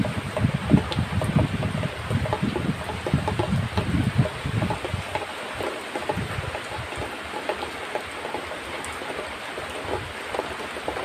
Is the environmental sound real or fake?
real